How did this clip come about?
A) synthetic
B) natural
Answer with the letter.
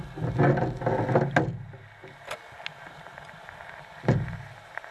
B